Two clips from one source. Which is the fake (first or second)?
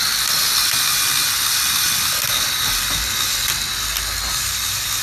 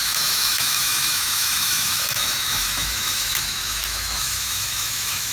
second